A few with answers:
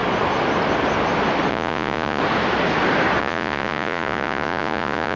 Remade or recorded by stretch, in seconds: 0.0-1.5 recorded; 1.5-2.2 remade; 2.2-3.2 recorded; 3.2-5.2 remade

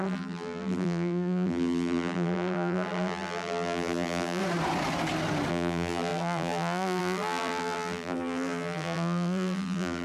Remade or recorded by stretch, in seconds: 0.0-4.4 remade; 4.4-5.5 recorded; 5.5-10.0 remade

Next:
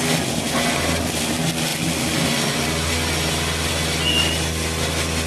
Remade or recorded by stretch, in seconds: 0.0-5.3 recorded

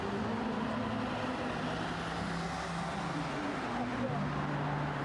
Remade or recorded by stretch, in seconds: 0.0-5.0 recorded

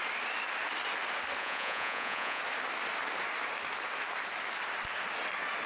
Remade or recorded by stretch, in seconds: 0.0-1.4 recorded; 1.4-2.4 remade; 2.4-5.7 recorded

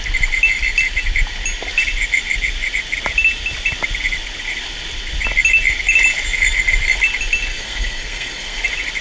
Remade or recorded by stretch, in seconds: 0.0-7.5 recorded; 7.5-8.6 remade; 8.6-9.0 recorded